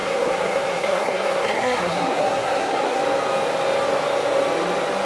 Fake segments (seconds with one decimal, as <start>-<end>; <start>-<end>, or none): 0.0-3.0